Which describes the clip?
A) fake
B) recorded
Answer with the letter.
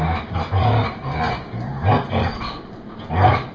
B